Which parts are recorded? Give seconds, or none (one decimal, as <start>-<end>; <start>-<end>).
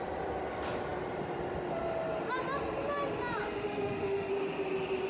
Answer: 0.0-3.4; 4.3-5.1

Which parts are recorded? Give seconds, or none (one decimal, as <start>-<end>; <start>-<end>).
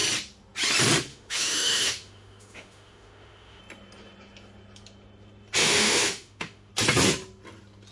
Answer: 0.0-1.1; 3.6-5.6; 6.7-7.9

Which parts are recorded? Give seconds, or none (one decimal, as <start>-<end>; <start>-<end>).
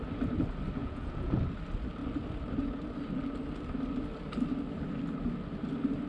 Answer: 0.0-0.8; 1.4-6.1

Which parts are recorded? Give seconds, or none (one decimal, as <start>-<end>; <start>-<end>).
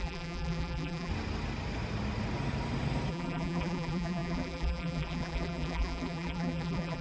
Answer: 1.1-3.1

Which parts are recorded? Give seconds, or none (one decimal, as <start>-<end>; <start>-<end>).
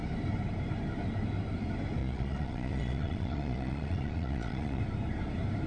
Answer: 0.0-2.0; 4.8-5.7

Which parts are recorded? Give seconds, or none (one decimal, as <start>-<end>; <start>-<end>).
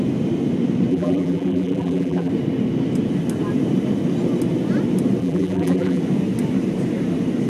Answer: 0.0-0.9; 2.3-5.2; 6.0-7.5